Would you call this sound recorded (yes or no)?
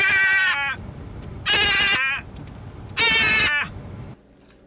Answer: yes